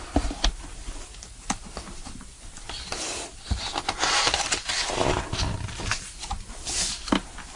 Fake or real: fake